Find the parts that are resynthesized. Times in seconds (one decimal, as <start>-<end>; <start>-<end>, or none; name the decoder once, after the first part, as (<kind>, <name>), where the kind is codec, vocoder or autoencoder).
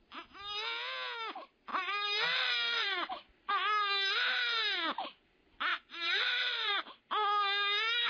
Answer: 1.7-3.5 (vocoder, BigVGAN v2); 5.7-7.0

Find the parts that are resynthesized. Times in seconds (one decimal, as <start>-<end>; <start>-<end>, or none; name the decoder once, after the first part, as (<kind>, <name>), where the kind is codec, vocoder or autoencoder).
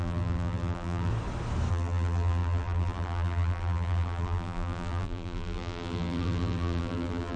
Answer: 0.0-1.1 (vocoder, BigVGAN v2); 1.7-7.4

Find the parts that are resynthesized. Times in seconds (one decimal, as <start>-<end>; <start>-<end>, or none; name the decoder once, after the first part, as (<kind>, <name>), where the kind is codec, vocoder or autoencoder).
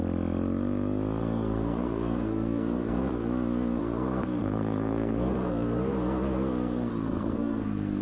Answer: 1.2-3.3 (codec, SNAC); 3.8-8.0